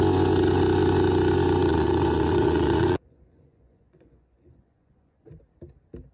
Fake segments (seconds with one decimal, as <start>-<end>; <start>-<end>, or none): 1.7-5.4